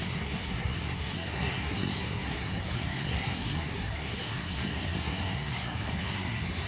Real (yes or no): no